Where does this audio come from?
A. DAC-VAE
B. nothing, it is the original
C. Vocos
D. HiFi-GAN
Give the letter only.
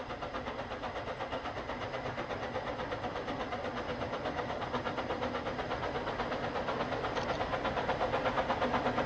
B